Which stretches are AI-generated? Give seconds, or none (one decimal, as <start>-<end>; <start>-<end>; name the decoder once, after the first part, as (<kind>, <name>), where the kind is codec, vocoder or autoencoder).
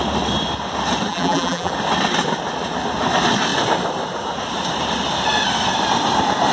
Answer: 1.1-1.7 (vocoder, BigVGAN v2)